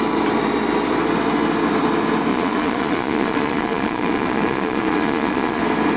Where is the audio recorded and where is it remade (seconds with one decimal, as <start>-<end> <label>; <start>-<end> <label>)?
0.0-2.3 recorded; 2.3-5.6 remade; 5.6-6.0 recorded